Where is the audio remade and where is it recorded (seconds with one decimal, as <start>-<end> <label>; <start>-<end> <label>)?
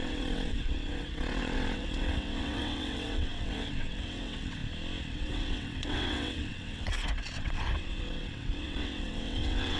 0.0-4.6 remade; 4.6-5.1 recorded; 5.1-9.8 remade